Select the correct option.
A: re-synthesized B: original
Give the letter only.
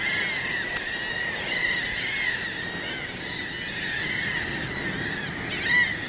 B